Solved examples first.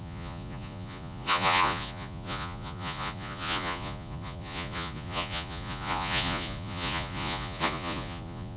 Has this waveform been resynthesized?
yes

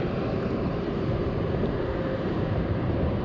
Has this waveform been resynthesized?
yes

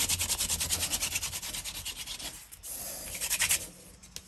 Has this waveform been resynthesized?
no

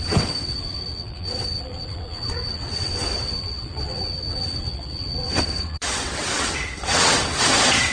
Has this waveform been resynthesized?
yes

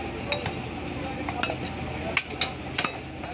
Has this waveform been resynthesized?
no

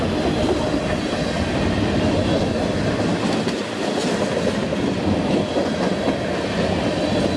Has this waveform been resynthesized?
no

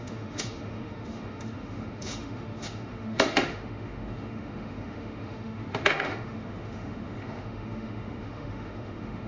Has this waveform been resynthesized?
yes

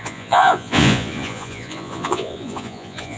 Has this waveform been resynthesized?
yes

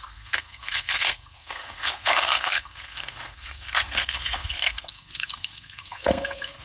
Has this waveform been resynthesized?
yes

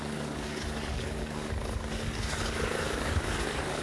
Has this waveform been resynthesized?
yes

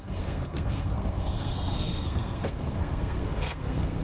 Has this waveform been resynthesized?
yes